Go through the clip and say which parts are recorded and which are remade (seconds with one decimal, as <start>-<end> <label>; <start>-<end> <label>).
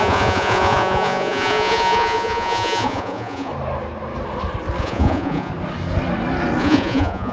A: 0.0-3.5 remade; 3.5-4.8 recorded; 4.8-5.5 remade; 5.5-6.6 recorded; 6.6-7.3 remade